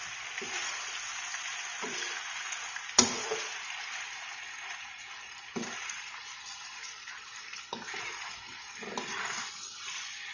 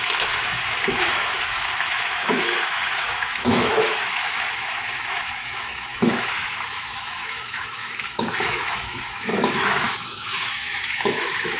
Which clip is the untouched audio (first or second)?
first